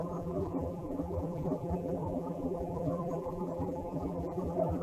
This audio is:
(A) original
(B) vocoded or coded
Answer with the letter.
B